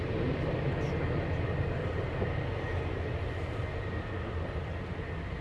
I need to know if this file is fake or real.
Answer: real